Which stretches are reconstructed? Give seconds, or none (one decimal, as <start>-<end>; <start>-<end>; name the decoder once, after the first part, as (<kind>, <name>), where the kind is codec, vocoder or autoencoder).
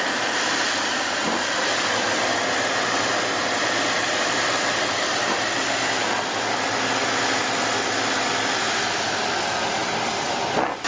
none